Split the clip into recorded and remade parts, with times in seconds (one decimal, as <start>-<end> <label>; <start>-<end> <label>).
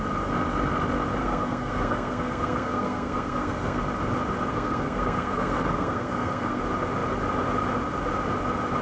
0.0-1.2 recorded; 1.2-3.8 remade; 3.8-4.5 recorded; 4.5-6.6 remade; 6.6-8.8 recorded